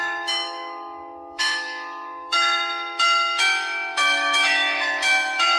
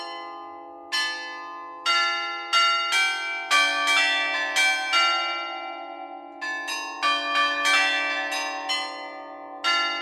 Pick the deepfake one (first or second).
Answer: first